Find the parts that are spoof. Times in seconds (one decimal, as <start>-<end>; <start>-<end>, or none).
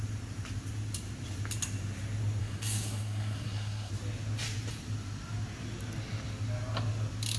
2.4-3.9